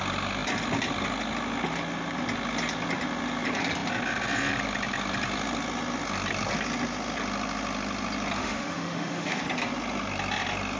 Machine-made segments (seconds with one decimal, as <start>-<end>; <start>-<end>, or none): 8.4-9.4